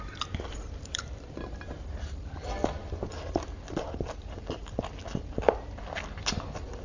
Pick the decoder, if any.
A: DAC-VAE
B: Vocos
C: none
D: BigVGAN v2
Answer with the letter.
C